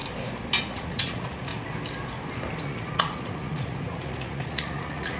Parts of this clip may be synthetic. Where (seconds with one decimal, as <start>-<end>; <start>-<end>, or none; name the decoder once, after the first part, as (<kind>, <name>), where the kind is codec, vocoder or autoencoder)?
0.6-1.5 (vocoder, Vocos); 2.6-5.2